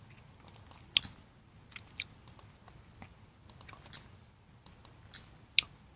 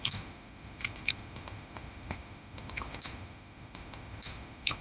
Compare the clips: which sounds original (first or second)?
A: first